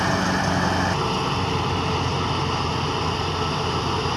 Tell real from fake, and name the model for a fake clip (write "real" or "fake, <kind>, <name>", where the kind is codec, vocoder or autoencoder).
real